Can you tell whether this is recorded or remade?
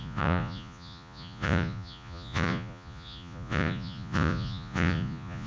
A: remade